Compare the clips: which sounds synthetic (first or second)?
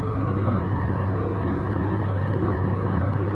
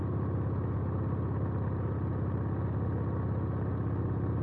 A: first